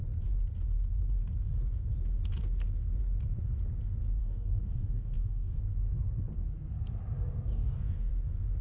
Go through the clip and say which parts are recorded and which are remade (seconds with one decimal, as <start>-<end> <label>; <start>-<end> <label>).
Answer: 0.0-4.2 recorded; 4.2-5.6 remade; 5.6-7.5 recorded; 7.5-8.1 remade; 8.1-8.6 recorded

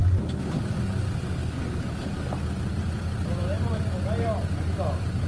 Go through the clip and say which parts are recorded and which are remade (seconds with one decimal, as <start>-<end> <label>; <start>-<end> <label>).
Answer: 0.0-1.4 recorded; 1.4-2.3 remade; 2.3-5.3 recorded